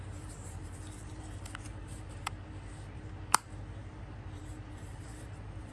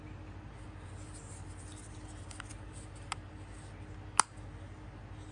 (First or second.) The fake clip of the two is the first